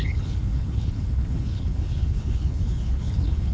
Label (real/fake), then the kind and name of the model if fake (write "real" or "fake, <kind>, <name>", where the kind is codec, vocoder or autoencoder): fake, codec, HILCodec